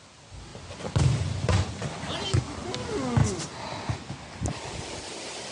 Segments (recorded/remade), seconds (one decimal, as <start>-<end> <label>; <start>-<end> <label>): 0.0-5.5 recorded